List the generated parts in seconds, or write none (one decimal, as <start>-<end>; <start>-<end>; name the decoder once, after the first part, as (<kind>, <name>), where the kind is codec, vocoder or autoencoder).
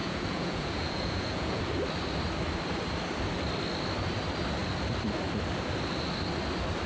0.0-1.6 (vocoder, Vocos)